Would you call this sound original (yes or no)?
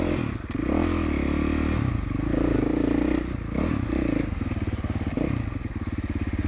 yes